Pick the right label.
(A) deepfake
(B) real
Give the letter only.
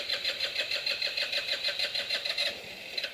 A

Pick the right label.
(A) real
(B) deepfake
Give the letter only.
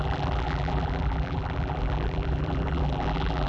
B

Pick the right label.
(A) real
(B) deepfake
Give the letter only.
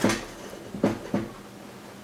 A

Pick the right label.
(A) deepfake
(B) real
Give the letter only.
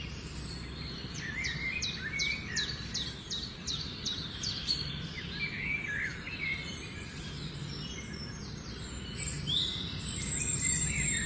A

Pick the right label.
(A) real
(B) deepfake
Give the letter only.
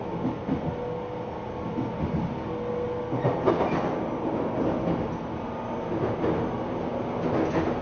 A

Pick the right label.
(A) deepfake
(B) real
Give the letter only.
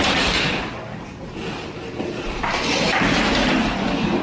B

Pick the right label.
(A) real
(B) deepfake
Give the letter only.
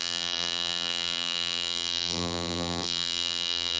B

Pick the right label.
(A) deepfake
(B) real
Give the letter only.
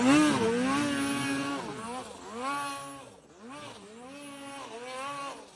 B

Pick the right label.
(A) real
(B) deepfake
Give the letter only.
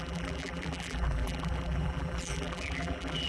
B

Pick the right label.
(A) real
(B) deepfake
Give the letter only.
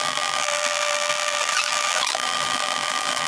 B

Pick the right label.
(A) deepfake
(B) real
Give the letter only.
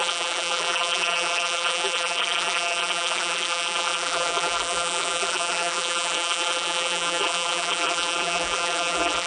A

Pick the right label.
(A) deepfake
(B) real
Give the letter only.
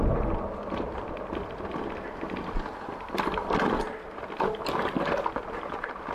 B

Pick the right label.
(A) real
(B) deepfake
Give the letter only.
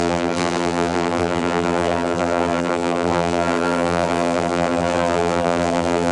B